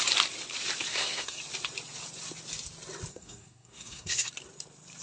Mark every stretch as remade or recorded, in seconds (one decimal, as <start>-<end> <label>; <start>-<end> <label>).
0.0-0.9 recorded; 0.9-1.4 remade; 1.4-3.1 recorded; 3.1-4.3 remade; 4.3-5.0 recorded